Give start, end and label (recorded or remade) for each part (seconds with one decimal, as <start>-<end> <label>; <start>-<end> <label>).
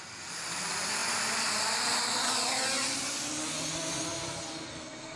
0.0-4.7 recorded; 4.7-5.2 remade